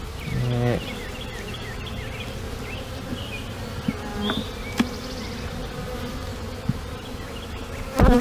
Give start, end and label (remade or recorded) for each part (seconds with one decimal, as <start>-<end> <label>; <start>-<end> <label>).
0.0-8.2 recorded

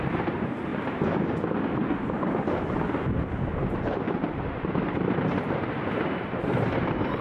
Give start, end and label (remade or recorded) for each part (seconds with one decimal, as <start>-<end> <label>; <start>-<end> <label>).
0.0-0.7 remade; 0.7-4.0 recorded; 4.0-7.2 remade

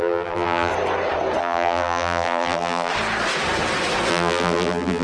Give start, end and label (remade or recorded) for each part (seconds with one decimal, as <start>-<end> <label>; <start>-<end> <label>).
0.0-0.7 remade; 0.7-1.4 recorded; 1.4-2.9 remade; 2.9-4.1 recorded; 4.1-5.0 remade

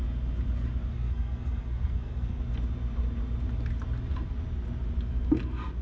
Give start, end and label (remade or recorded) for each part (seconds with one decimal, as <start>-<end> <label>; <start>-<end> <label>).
0.0-0.9 recorded; 0.9-2.4 remade; 2.4-5.8 recorded

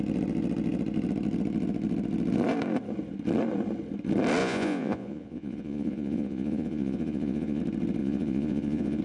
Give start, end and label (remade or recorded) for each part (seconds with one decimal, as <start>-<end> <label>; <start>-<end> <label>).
0.0-4.4 recorded; 4.4-7.6 remade; 7.6-8.0 recorded; 8.0-9.0 remade

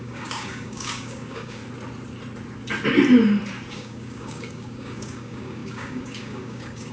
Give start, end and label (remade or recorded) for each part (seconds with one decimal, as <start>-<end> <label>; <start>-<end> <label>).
0.0-1.6 remade; 1.6-3.7 recorded; 3.7-6.9 remade

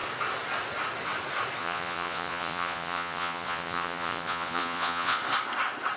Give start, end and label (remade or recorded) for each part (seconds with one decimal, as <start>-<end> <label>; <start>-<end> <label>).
0.0-1.6 recorded; 1.6-5.2 remade; 5.2-6.0 recorded

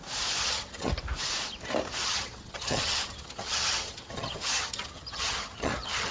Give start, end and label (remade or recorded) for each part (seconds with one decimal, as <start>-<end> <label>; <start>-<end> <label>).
0.0-0.4 recorded; 0.4-0.9 remade; 0.9-2.0 recorded; 2.0-6.1 remade